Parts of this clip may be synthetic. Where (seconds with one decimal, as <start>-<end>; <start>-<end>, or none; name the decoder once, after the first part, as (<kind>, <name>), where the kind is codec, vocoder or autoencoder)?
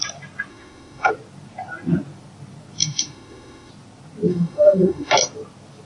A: 0.5-1.1 (autoencoder, DAC-VAE); 2.8-3.7; 4.3-5.1